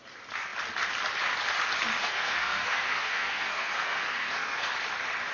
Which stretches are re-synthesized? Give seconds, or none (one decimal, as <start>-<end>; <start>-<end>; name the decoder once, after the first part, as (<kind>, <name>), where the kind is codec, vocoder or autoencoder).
2.0-4.7 (codec, SNAC)